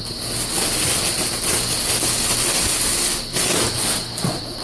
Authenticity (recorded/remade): recorded